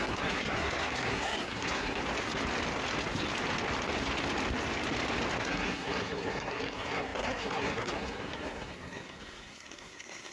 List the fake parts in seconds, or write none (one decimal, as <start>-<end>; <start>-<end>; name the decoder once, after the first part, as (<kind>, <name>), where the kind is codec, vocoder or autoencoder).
0.0-2.0 (codec, SNAC); 5.4-10.3